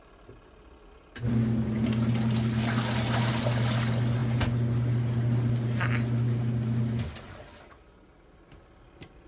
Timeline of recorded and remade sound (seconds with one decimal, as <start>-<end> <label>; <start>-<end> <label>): 0.0-9.3 recorded